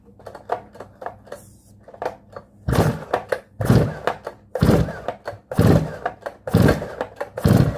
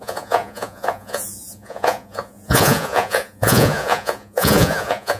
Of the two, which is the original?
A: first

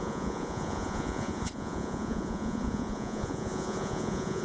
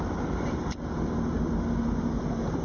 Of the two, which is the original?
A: second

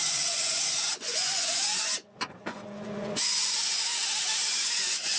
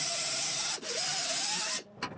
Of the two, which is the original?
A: second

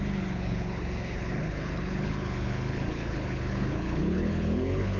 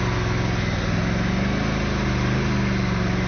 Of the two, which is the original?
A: second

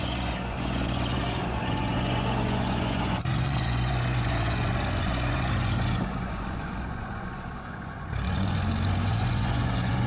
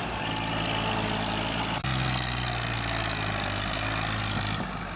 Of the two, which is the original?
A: second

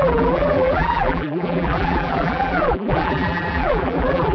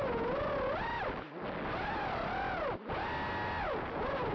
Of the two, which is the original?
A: second